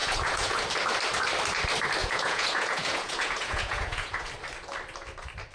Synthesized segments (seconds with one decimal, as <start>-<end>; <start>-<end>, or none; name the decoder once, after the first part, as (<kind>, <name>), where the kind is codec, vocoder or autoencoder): 0.0-0.6 (vocoder, Vocos); 2.0-4.3